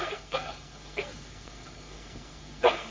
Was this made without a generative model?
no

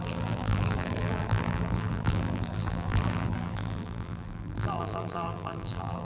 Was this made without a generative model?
no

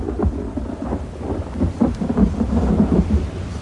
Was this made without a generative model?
yes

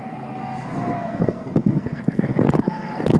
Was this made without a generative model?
no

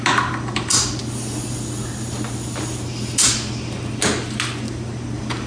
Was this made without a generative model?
yes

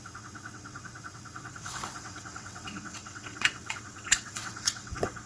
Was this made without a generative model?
no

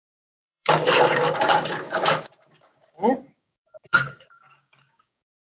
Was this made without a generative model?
no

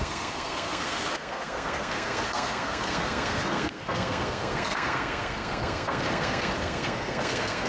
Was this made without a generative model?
no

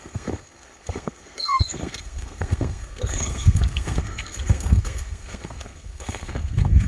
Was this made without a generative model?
no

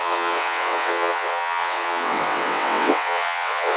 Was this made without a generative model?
no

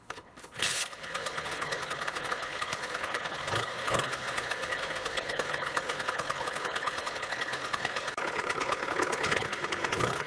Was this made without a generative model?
no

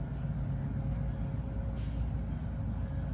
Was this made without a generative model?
yes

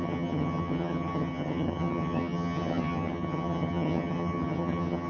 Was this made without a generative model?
no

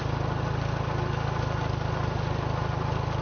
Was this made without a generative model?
yes